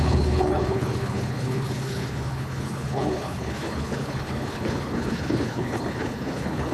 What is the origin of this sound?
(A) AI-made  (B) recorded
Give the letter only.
A